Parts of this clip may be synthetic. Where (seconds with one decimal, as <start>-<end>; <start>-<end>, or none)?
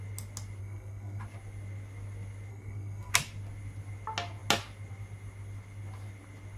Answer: 0.6-1.2; 2.5-3.1